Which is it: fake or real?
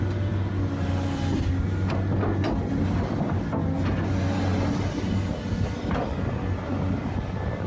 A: real